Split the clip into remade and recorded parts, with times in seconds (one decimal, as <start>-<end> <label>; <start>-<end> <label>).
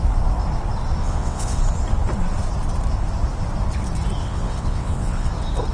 0.0-1.0 recorded; 1.0-1.6 remade; 1.6-4.2 recorded; 4.2-5.3 remade; 5.3-5.7 recorded